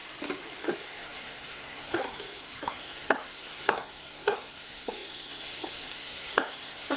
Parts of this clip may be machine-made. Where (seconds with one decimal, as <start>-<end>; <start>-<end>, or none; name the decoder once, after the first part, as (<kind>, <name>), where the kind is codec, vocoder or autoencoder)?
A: 0.6-7.0 (codec, SNAC)